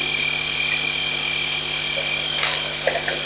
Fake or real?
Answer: real